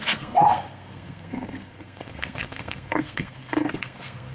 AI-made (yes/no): yes